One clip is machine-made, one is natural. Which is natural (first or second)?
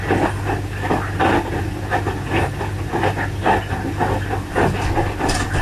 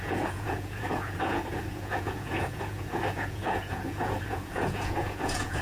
first